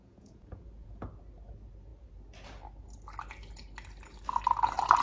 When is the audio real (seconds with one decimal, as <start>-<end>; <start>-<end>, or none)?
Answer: 1.1-5.0